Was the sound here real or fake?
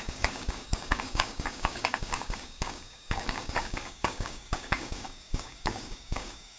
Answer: fake